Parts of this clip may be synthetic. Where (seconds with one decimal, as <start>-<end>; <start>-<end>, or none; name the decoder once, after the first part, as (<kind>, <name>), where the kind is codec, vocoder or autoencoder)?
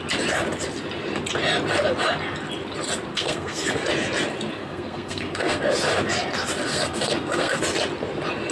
3.1-3.8 (codec, SNAC); 4.6-5.6; 6.7-7.6